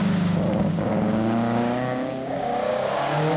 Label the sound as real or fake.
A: fake